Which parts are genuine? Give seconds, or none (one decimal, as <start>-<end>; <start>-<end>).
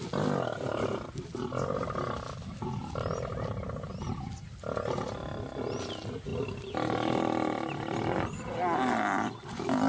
0.0-9.9